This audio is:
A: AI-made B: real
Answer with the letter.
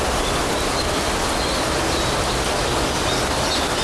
B